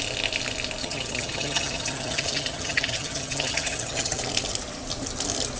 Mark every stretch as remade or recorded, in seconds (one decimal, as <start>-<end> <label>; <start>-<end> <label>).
0.0-0.8 recorded; 0.8-4.2 remade; 4.2-5.6 recorded